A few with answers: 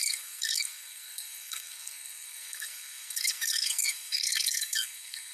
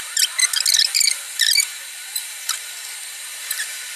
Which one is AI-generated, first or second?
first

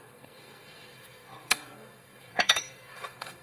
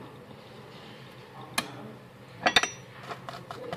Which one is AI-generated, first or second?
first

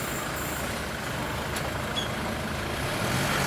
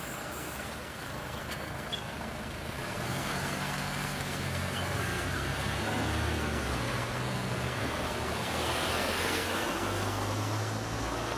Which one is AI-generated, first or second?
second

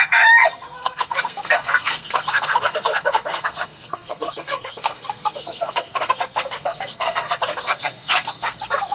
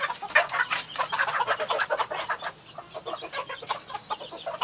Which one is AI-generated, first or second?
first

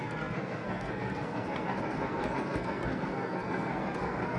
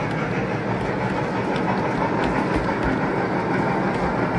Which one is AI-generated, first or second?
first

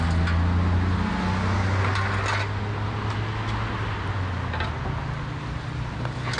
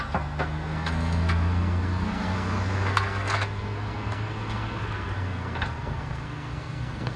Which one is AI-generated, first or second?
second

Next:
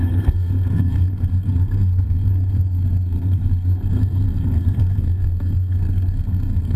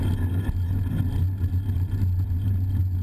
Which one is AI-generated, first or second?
first